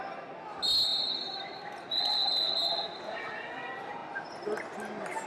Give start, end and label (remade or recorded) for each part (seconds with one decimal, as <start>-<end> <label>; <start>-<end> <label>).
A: 0.0-5.3 recorded